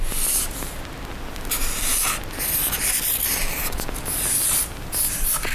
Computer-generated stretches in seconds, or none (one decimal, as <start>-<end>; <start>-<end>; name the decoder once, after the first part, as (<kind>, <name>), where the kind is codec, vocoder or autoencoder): 1.9-4.6 (vocoder, BigVGAN v2)